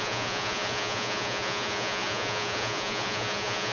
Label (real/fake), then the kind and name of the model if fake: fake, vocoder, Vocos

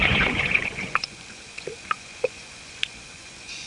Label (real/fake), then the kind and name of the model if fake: fake, vocoder, Vocos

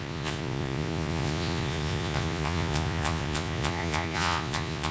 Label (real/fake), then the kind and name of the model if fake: fake, vocoder, Vocos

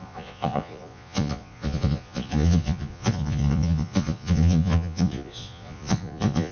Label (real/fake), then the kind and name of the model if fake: fake, vocoder, Vocos